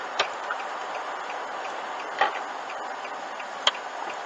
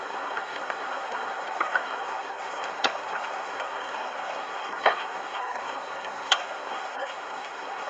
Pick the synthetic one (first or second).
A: second